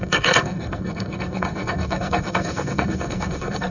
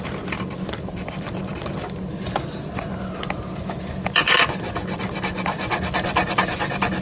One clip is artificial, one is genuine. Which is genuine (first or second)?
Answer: second